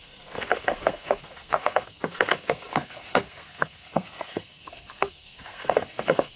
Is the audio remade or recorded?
remade